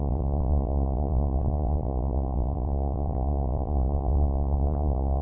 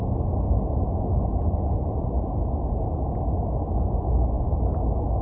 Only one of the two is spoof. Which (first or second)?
first